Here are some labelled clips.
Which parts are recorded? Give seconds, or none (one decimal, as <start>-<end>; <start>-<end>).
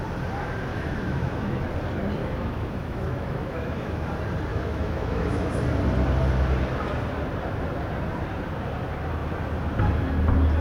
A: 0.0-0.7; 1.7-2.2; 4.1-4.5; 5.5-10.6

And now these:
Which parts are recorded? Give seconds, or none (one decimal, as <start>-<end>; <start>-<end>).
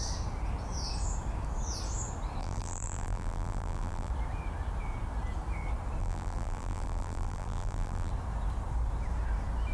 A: 0.0-2.4; 4.1-6.0; 8.1-9.7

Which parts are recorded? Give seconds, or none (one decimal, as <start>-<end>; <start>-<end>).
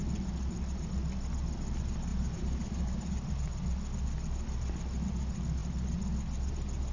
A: 0.0-2.1; 3.1-6.9